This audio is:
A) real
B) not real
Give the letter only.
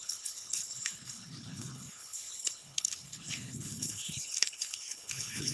B